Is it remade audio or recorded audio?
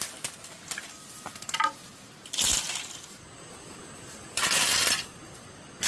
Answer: recorded